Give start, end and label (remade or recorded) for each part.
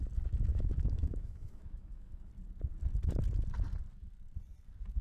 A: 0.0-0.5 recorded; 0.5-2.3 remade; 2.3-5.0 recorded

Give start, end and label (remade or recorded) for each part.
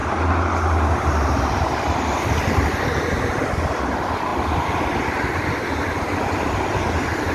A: 0.0-7.3 recorded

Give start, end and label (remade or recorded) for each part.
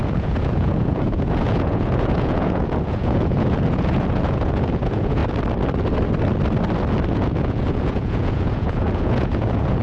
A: 0.0-5.2 remade; 5.2-7.1 recorded; 7.1-9.8 remade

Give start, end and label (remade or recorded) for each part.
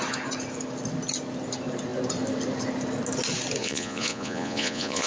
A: 0.0-3.6 recorded; 3.6-5.1 remade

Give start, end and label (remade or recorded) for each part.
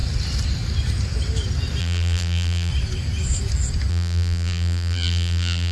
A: 0.0-1.8 recorded; 1.8-2.7 remade; 2.7-3.9 recorded; 3.9-5.7 remade